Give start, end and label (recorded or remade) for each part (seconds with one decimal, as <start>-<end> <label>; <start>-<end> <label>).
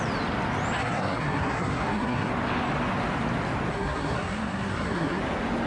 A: 0.0-0.8 recorded; 0.8-2.3 remade; 2.3-3.7 recorded; 3.7-5.2 remade; 5.2-5.7 recorded